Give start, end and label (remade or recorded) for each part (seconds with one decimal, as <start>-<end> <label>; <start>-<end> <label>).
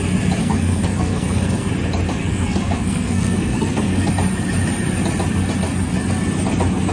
0.0-0.4 recorded; 0.4-1.7 remade; 1.7-2.2 recorded; 2.2-4.1 remade; 4.1-6.9 recorded